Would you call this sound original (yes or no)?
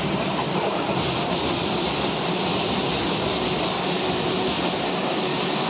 yes